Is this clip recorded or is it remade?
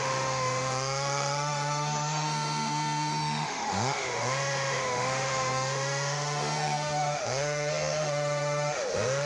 remade